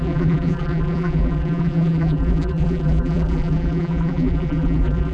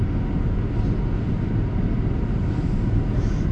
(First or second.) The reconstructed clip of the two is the first